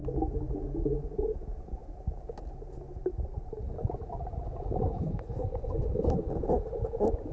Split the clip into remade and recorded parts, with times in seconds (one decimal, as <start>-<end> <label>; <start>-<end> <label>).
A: 0.0-3.0 recorded; 3.0-3.6 remade; 3.6-4.7 recorded; 4.7-5.6 remade; 5.6-7.3 recorded